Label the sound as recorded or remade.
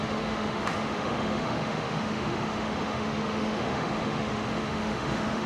remade